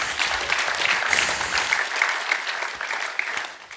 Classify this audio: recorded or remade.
recorded